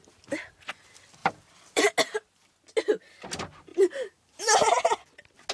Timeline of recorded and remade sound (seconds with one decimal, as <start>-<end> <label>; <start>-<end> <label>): 0.0-1.2 recorded; 1.2-1.8 remade; 1.8-3.7 recorded; 3.7-4.7 remade; 4.7-5.5 recorded